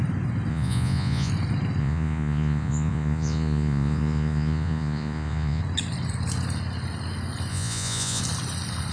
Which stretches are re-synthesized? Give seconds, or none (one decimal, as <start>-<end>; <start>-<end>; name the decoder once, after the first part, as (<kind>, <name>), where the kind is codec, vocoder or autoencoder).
0.5-1.3 (vocoder, Vocos); 1.8-5.6; 7.5-8.2